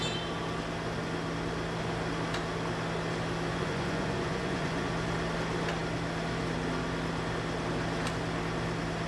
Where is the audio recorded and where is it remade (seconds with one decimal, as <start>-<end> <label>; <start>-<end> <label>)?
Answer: 0.0-3.5 recorded; 3.5-4.9 remade; 4.9-9.1 recorded